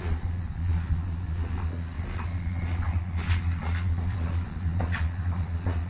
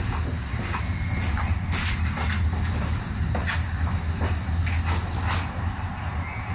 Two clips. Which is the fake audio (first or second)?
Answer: first